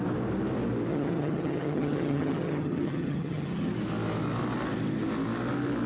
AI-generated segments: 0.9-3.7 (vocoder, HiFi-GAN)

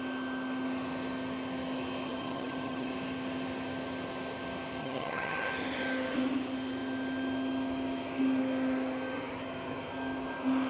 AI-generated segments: 2.1-2.9 (vocoder, HiFi-GAN); 4.8-5.5

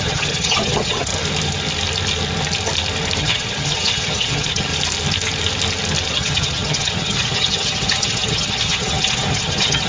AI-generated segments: 0.0-1.1 (vocoder, HiFi-GAN); 3.2-4.7; 6.1-9.9

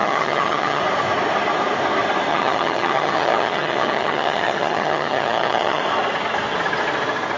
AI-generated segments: 0.0-0.8 (vocoder, HiFi-GAN); 2.3-5.8